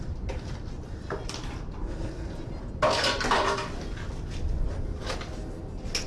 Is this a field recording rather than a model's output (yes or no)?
yes